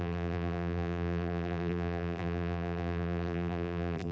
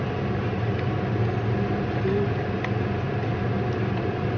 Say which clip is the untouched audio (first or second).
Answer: second